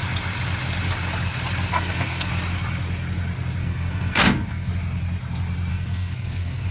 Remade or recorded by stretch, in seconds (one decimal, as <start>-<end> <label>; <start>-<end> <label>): 0.0-1.7 recorded; 1.7-2.3 remade; 2.3-3.6 recorded; 3.6-4.7 remade; 4.7-5.7 recorded; 5.7-6.7 remade